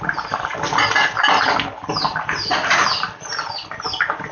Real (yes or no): yes